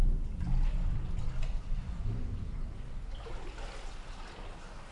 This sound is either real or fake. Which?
real